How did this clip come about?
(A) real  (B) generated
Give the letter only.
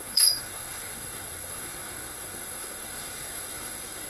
B